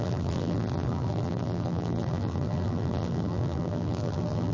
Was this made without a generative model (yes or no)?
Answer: no